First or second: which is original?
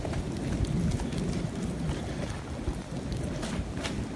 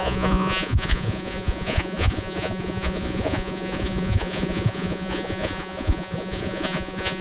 first